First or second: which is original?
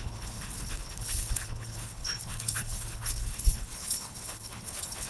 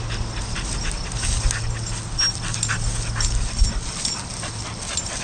second